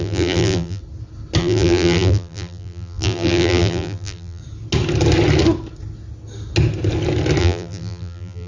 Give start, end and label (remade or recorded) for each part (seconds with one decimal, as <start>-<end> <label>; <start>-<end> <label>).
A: 0.0-0.8 remade; 0.8-1.4 recorded; 1.4-4.4 remade; 4.4-7.4 recorded; 7.4-8.5 remade